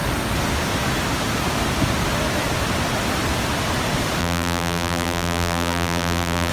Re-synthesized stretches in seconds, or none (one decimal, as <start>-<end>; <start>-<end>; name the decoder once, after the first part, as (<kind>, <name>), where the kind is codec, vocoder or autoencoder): 4.2-6.5 (vocoder, BigVGAN v2)